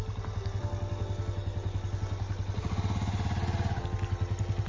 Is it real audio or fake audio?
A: real